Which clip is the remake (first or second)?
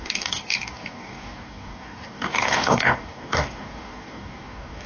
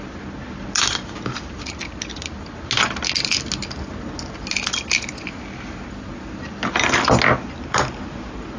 first